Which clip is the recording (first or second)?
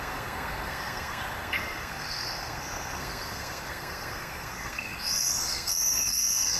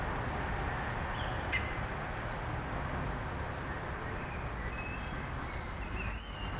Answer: second